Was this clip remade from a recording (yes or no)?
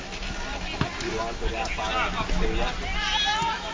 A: no